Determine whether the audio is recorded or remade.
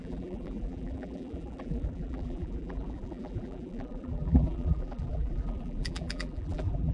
remade